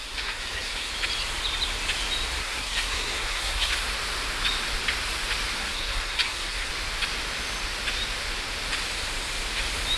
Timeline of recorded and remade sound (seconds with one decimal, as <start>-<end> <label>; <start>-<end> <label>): 0.0-0.9 remade; 0.9-2.4 recorded; 2.4-3.8 remade; 3.8-5.6 recorded; 5.6-6.7 remade; 6.7-10.0 recorded